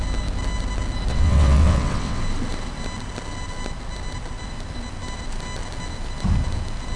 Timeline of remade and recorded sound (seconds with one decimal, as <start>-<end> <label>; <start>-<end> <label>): 0.0-1.1 recorded; 1.1-2.2 remade; 2.2-7.0 recorded